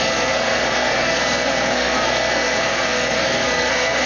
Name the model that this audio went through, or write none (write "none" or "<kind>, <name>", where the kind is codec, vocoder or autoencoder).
codec, SNAC